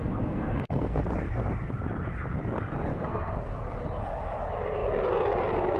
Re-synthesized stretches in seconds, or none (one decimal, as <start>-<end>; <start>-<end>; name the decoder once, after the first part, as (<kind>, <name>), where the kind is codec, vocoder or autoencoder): 0.0-1.0 (codec, SNAC); 2.9-3.5